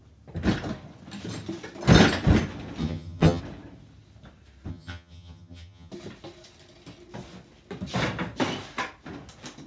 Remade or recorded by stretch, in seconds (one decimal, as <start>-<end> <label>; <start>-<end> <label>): 0.0-2.8 recorded; 2.8-3.4 remade; 3.4-4.7 recorded; 4.7-5.9 remade; 5.9-9.7 recorded